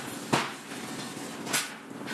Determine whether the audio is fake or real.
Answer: real